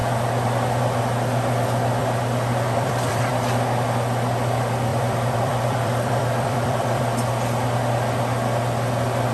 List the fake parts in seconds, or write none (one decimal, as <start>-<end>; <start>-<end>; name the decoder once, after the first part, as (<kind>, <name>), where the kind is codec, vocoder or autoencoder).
2.0-3.3 (vocoder, BigVGAN v2); 4.9-7.0